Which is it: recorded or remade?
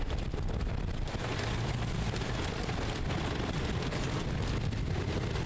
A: recorded